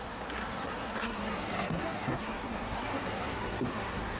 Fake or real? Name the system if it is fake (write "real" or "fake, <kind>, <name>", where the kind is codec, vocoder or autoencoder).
fake, codec, SNAC